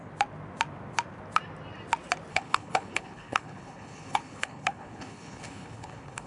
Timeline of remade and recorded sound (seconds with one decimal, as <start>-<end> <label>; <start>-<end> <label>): 0.0-2.3 recorded; 2.3-6.3 remade